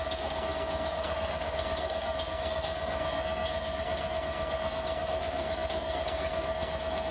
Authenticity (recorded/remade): remade